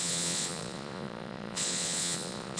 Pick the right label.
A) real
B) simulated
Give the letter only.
B